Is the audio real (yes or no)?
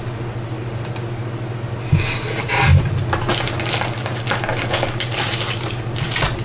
yes